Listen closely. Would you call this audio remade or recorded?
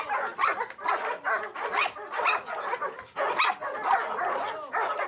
recorded